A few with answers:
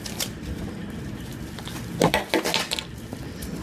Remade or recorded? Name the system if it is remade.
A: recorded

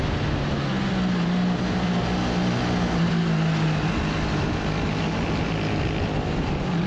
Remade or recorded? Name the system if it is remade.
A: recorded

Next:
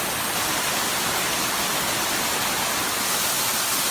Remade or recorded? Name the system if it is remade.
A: recorded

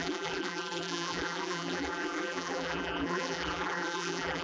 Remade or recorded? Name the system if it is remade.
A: remade, vocoder, BigVGAN v2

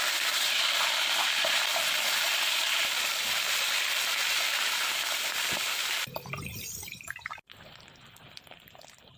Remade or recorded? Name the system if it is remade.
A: recorded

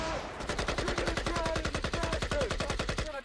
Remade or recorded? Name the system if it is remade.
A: remade, vocoder, BigVGAN v2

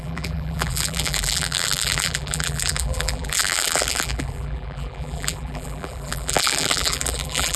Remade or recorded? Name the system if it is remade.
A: remade, vocoder, BigVGAN v2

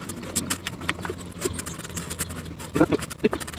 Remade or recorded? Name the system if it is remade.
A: recorded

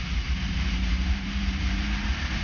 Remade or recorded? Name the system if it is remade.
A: remade, vocoder, BigVGAN v2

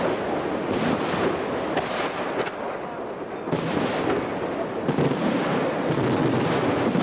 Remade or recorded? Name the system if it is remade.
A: recorded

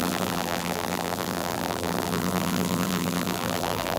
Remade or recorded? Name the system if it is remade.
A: remade, vocoder, BigVGAN v2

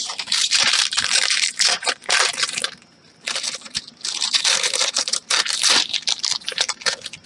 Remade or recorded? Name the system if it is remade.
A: remade, vocoder, BigVGAN v2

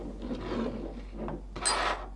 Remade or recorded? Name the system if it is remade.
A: recorded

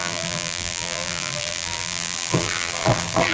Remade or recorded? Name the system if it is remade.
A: remade, vocoder, BigVGAN v2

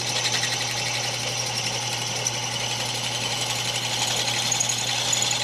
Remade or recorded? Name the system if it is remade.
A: recorded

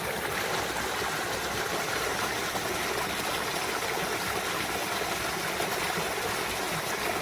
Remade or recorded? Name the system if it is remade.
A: recorded